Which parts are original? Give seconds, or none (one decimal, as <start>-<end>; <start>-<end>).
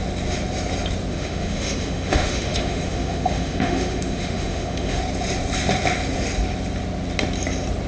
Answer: 0.0-1.1; 5.0-7.9